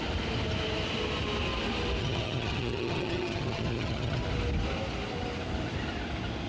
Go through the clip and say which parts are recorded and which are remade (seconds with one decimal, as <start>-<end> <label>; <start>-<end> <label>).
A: 0.0-2.0 recorded; 2.0-4.2 remade; 4.2-6.5 recorded